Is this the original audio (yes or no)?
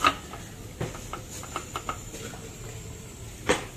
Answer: yes